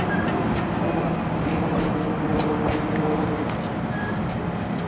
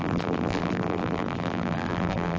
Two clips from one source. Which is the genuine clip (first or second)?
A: first